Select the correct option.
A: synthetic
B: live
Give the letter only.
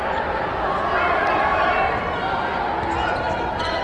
B